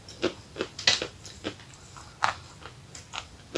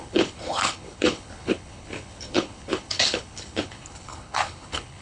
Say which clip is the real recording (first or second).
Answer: first